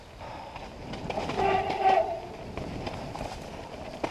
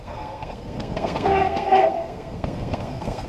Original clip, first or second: first